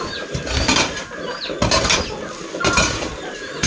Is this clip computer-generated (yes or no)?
no